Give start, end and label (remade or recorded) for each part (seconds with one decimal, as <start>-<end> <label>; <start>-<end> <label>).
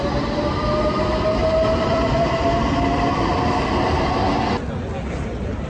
0.0-1.4 recorded; 1.4-4.1 remade; 4.1-5.7 recorded